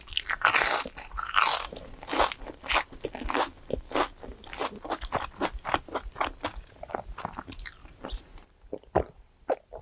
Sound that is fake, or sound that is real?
real